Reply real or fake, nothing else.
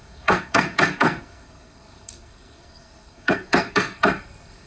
fake